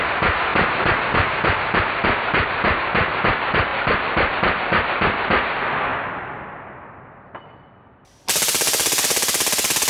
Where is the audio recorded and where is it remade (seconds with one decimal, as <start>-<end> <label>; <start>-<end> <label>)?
0.0-9.9 recorded